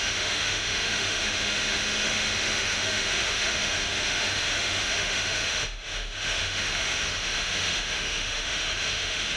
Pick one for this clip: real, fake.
fake